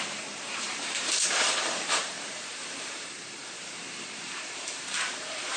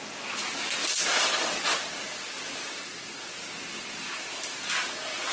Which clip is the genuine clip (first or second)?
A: second